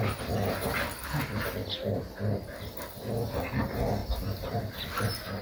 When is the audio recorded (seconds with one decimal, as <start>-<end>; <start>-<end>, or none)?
0.0-5.4